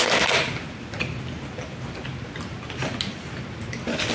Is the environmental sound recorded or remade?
recorded